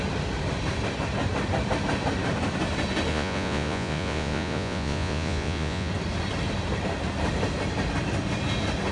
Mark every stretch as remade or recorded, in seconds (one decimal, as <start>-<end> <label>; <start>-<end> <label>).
0.0-3.1 recorded; 3.1-5.9 remade; 5.9-8.9 recorded